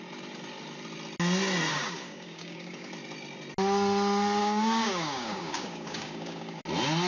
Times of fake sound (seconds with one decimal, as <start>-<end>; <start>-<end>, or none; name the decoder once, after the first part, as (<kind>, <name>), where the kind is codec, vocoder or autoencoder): 1.7-2.9 (codec, DAC); 4.4-6.6